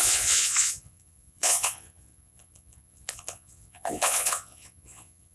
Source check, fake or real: fake